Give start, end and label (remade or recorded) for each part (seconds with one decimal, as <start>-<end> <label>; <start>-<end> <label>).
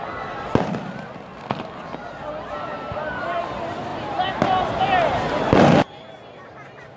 0.0-7.0 recorded